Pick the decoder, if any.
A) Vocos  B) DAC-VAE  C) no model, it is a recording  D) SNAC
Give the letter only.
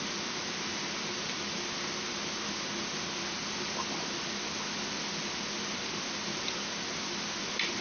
C